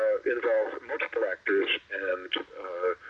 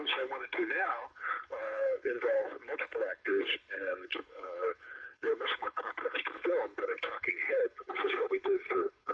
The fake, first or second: second